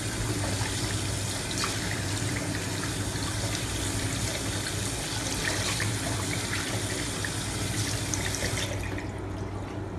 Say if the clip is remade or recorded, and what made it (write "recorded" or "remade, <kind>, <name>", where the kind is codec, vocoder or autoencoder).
recorded